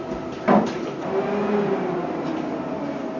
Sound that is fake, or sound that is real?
real